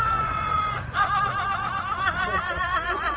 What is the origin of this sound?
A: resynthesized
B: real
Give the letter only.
A